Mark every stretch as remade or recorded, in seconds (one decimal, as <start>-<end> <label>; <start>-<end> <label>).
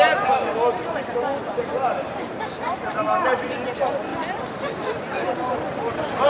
0.0-1.3 recorded; 1.3-3.5 remade; 3.5-4.1 recorded; 4.1-6.3 remade